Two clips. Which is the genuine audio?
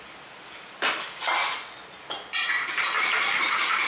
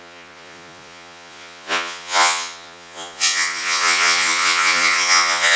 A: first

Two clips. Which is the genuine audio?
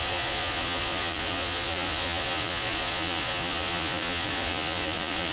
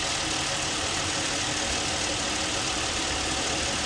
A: second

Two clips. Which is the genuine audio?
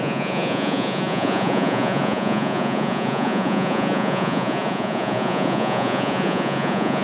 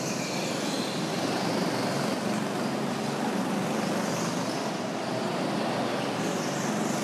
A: second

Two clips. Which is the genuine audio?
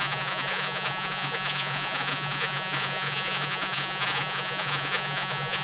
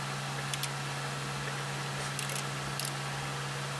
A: second